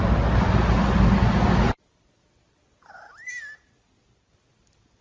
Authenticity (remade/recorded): recorded